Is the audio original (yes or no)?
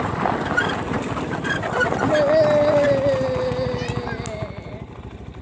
yes